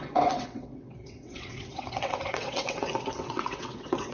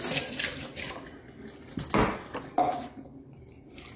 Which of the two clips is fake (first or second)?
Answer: first